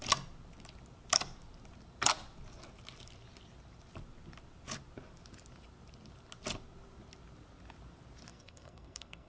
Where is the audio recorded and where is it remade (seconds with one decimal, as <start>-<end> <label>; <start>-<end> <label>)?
0.0-8.3 recorded; 8.3-9.3 remade